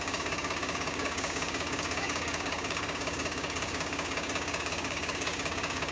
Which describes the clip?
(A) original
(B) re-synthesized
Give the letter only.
B